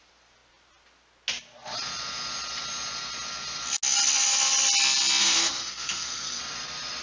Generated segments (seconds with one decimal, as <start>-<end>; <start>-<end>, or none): 5.2-6.4